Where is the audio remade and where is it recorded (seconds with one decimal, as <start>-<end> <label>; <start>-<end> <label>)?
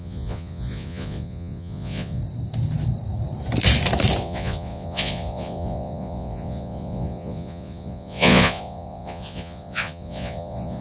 0.0-2.2 remade; 2.2-4.2 recorded; 4.2-10.8 remade